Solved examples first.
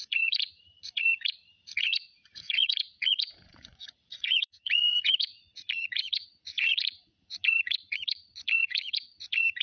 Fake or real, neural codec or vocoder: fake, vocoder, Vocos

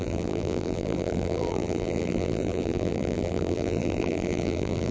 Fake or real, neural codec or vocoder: fake, vocoder, BigVGAN v2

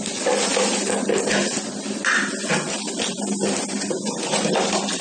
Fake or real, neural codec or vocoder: real